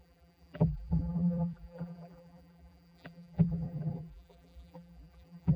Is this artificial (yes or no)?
yes